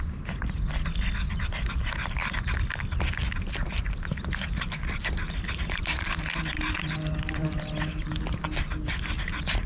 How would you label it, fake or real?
real